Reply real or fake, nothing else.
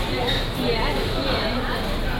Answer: real